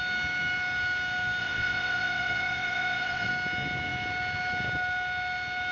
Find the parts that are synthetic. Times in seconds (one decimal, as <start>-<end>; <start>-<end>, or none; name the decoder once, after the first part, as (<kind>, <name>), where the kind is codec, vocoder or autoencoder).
1.4-3.3 (vocoder, WaveNeXt)